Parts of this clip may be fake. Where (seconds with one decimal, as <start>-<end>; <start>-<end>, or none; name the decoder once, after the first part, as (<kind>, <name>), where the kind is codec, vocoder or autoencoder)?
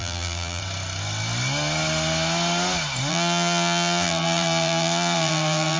0.0-0.6 (vocoder, BigVGAN v2); 3.1-5.8